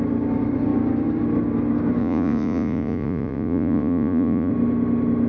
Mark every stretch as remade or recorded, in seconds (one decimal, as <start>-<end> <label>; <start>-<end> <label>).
0.0-2.0 recorded; 2.0-4.5 remade; 4.5-5.3 recorded